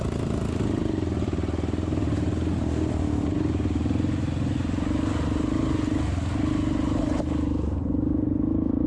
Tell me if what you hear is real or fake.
real